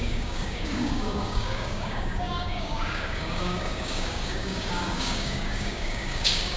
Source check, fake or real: fake